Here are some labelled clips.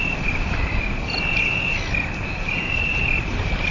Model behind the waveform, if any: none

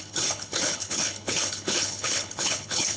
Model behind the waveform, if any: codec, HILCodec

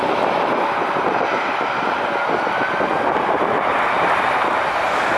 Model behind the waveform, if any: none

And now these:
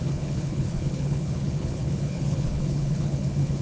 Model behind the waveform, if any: codec, HILCodec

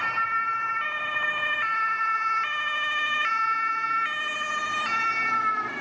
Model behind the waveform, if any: none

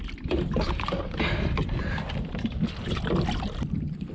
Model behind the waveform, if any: none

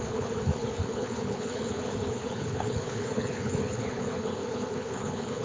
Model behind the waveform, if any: codec, HILCodec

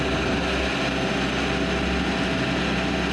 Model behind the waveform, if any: none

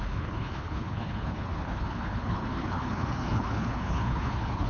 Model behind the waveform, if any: codec, HILCodec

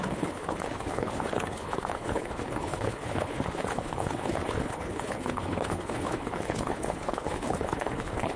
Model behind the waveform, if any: codec, HILCodec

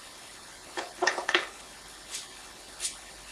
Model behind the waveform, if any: codec, HILCodec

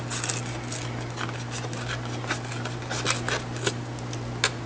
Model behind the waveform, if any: none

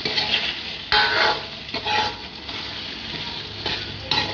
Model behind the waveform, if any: none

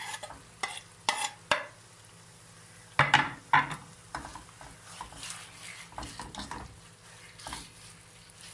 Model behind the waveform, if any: none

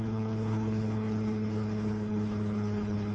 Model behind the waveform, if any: codec, HILCodec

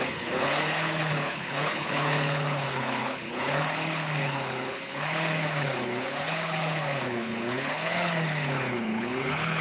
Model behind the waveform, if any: codec, HILCodec